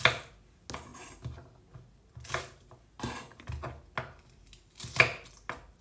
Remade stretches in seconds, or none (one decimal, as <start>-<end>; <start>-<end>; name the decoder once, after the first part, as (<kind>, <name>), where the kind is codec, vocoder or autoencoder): none